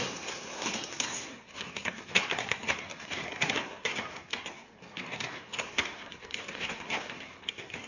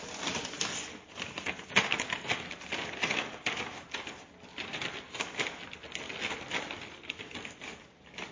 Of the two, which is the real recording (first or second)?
second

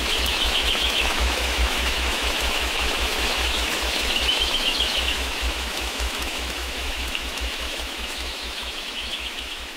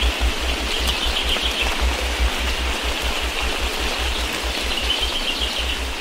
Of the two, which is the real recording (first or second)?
second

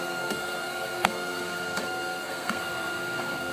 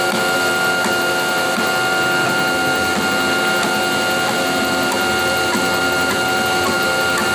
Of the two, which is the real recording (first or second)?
second